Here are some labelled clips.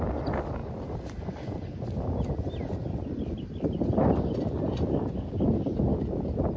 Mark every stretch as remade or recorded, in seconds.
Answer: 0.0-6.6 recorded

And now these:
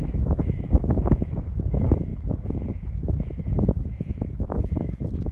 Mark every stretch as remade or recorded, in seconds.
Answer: 0.0-5.3 remade